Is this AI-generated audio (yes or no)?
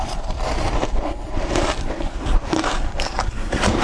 yes